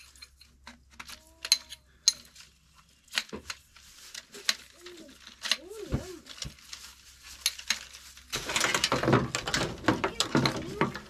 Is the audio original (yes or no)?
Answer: yes